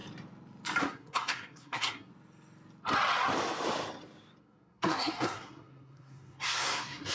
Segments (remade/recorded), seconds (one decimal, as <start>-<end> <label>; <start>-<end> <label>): 0.0-0.8 recorded; 0.8-2.1 remade; 2.1-4.4 recorded; 4.4-7.1 remade